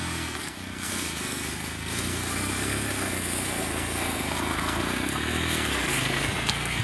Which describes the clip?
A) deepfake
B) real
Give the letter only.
A